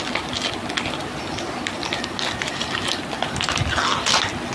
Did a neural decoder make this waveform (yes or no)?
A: no